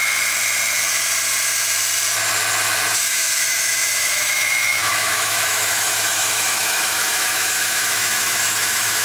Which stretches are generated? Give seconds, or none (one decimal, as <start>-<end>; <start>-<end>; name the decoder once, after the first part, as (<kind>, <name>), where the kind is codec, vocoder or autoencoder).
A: 2.9-9.0 (autoencoder, DAC-VAE)